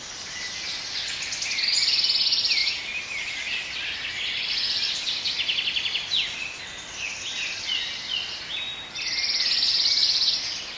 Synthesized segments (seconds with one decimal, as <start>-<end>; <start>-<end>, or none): none